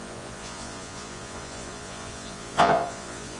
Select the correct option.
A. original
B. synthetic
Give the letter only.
B